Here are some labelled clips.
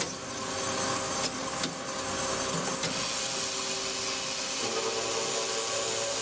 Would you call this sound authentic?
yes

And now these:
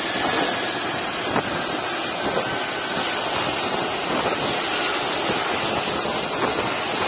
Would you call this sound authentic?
yes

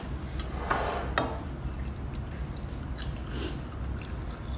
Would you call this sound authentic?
yes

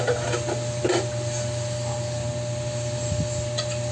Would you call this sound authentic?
yes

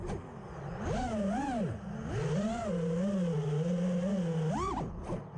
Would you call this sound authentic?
yes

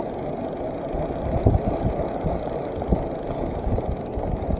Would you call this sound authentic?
yes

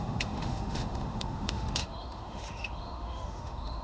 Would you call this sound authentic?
no